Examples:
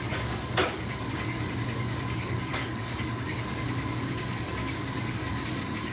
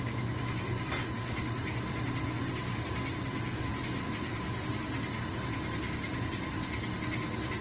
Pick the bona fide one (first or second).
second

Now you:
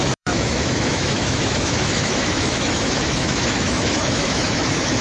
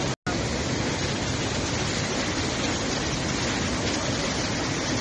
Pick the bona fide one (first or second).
second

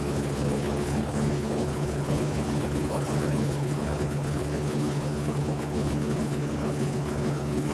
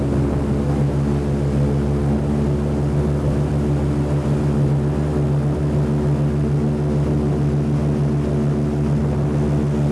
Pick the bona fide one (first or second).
second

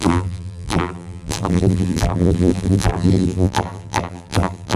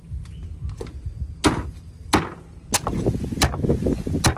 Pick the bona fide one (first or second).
second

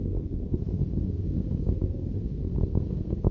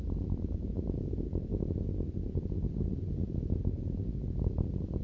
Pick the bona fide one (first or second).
second